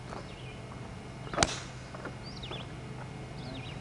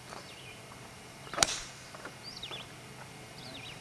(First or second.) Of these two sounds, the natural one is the first